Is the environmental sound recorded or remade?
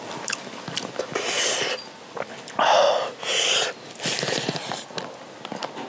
recorded